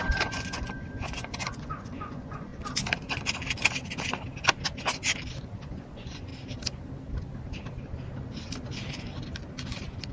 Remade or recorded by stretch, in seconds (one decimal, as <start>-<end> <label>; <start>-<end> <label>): 0.0-2.5 remade; 2.5-5.4 recorded; 5.4-6.3 remade; 6.3-10.1 recorded